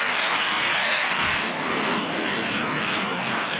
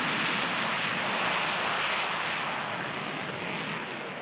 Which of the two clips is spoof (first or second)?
first